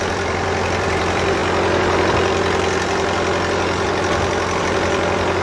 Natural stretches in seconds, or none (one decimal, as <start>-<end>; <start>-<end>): 1.4-4.6